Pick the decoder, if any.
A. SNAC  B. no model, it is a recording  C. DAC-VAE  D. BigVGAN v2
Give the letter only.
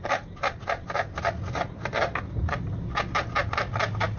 B